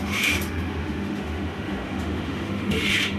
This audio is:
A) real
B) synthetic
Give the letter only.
B